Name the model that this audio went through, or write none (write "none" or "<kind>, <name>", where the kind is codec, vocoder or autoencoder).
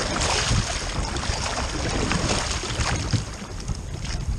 none